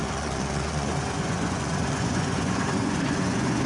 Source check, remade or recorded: remade